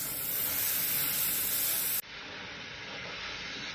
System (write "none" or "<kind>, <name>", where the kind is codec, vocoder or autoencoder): none